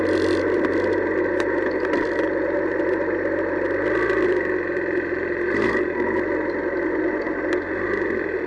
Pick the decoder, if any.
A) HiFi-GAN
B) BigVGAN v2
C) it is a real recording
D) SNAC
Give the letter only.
C